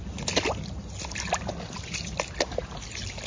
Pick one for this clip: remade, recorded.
recorded